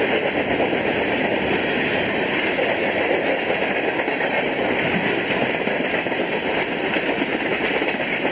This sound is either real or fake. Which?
real